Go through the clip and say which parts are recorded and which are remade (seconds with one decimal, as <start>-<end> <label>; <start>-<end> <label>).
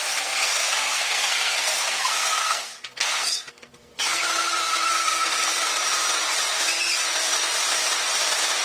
0.0-4.2 remade; 4.2-4.9 recorded; 4.9-5.7 remade; 5.7-8.6 recorded